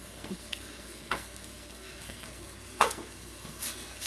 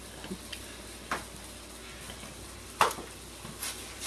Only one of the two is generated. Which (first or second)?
first